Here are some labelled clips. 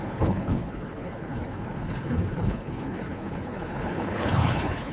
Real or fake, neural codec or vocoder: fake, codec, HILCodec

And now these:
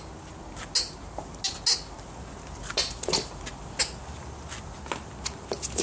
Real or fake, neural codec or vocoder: real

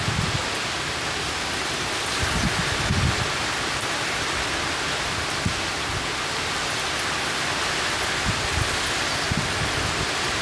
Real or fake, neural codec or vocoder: real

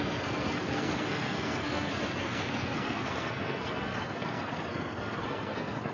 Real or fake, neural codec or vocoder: fake, codec, SNAC